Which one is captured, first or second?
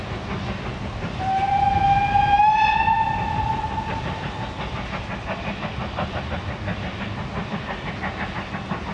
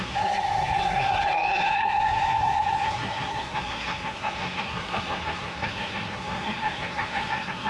first